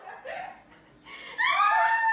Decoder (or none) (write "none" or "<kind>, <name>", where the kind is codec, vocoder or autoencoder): none